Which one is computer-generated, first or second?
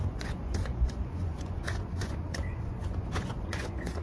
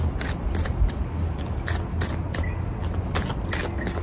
first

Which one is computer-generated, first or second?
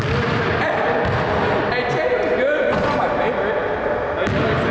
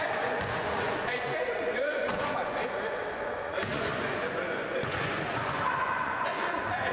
second